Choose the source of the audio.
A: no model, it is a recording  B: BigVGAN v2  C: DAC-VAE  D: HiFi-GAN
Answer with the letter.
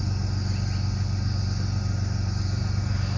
A